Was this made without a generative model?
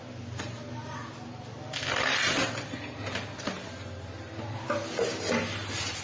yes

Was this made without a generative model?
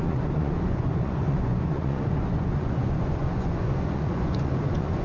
no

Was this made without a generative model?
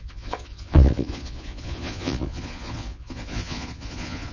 no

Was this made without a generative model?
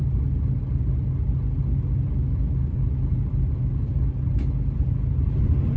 yes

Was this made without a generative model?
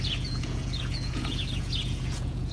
no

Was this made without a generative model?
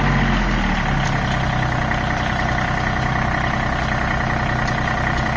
yes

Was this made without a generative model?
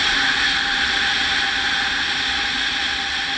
yes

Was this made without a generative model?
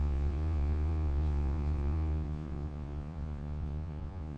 no